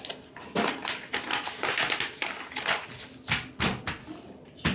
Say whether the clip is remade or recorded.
recorded